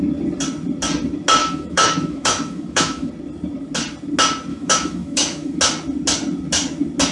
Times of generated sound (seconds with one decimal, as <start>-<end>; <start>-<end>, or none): 1.4-3.1; 4.5-5.6